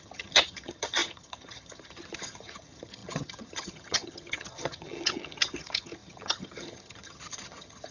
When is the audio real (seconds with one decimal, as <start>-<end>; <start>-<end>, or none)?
none